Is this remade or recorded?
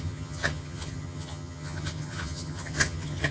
remade